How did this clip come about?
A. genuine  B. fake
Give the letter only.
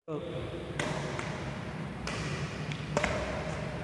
B